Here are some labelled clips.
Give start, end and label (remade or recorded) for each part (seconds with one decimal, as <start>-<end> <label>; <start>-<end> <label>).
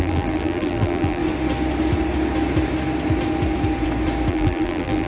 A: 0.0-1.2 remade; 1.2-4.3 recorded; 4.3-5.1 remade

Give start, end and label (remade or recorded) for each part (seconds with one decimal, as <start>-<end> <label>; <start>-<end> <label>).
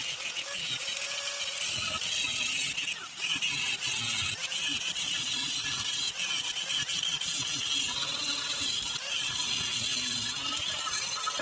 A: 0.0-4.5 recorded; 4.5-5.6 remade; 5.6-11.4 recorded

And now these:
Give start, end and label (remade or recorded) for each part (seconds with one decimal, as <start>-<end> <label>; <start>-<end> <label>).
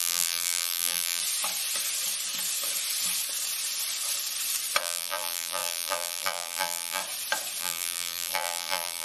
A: 0.0-1.2 remade; 1.2-4.8 recorded; 4.8-7.0 remade; 7.0-7.6 recorded; 7.6-9.0 remade